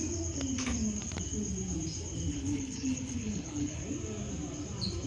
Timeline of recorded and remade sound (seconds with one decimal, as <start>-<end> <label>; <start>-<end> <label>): 0.0-2.3 recorded; 2.3-3.8 remade; 3.8-5.1 recorded